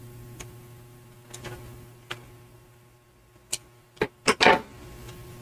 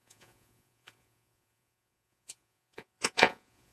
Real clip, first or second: first